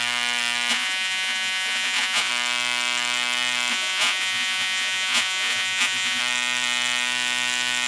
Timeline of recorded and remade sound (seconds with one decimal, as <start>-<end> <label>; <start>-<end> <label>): 0.0-0.7 recorded; 0.7-2.3 remade; 2.3-3.7 recorded; 3.7-6.2 remade; 6.2-7.9 recorded